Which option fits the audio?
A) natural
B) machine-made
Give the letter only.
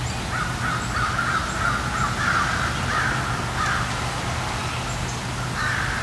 A